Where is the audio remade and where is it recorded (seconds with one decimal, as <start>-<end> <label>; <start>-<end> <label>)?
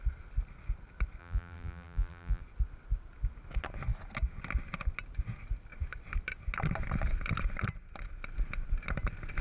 0.0-1.2 recorded; 1.2-2.4 remade; 2.4-9.4 recorded